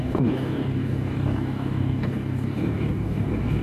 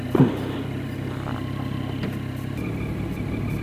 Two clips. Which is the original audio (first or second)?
second